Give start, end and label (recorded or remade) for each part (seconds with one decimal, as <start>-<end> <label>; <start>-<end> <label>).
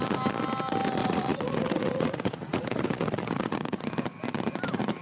0.0-1.0 recorded; 1.0-3.8 remade; 3.8-5.0 recorded